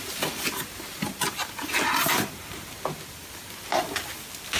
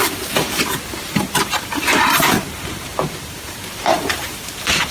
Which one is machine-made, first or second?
second